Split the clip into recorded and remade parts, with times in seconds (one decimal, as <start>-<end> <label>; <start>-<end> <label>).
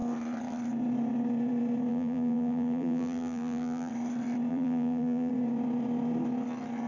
0.0-1.9 recorded; 1.9-3.9 remade; 3.9-4.5 recorded; 4.5-5.3 remade; 5.3-6.9 recorded